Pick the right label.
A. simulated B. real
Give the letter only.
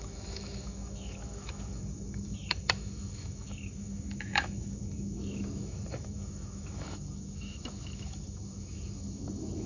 A